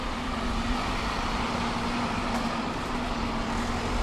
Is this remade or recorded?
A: remade